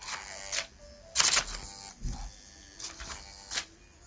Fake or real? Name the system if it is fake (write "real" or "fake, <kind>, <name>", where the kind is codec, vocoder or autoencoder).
real